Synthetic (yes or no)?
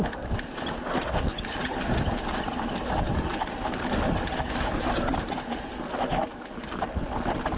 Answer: no